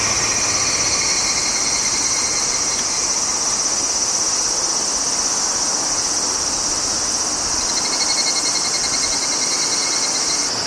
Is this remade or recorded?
recorded